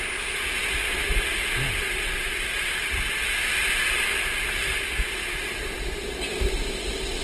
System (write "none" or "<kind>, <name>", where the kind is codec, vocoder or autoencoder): none